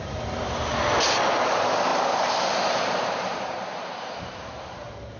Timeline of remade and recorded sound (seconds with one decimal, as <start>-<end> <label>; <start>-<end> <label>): 0.0-0.6 remade; 0.6-1.5 recorded; 1.5-5.2 remade